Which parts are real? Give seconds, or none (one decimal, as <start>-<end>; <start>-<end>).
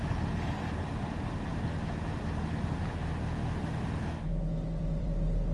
1.5-4.8